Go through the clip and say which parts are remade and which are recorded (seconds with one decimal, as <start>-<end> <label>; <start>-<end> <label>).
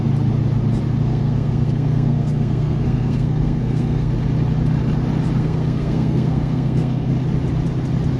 0.0-1.1 recorded; 1.1-4.1 remade; 4.1-5.4 recorded; 5.4-7.1 remade; 7.1-8.2 recorded